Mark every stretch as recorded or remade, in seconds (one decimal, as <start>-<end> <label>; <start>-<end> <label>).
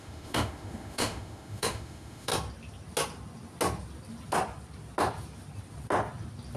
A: 0.0-2.3 remade; 2.3-6.6 recorded